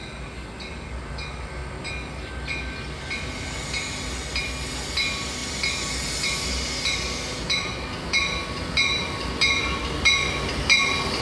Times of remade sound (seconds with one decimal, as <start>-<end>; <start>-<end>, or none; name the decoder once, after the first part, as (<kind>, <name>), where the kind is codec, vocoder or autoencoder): none